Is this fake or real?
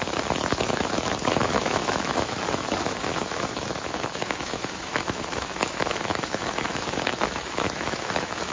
fake